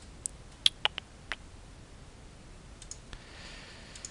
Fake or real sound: real